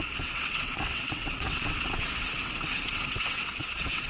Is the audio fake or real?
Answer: fake